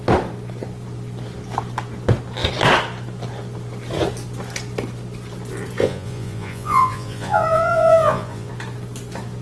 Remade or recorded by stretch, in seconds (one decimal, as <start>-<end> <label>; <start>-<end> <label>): 0.0-5.8 recorded; 5.8-8.5 remade; 8.5-9.4 recorded